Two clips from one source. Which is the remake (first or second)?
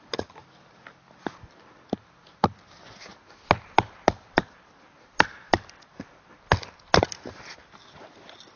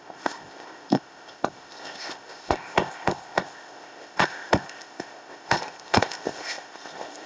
second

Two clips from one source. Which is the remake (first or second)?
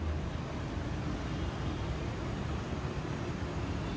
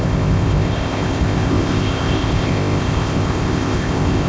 second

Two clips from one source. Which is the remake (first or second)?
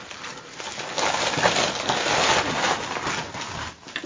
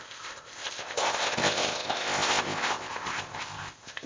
second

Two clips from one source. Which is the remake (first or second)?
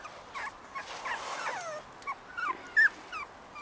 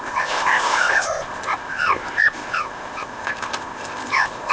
second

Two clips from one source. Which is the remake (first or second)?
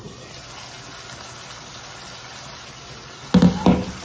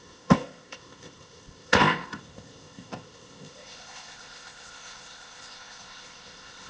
second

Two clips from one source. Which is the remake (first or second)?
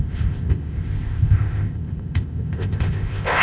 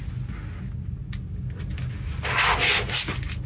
first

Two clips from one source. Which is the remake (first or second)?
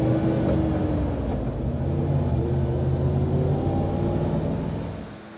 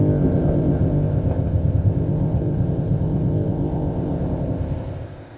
second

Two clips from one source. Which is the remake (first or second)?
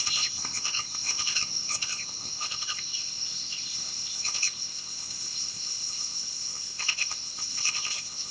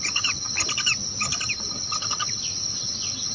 first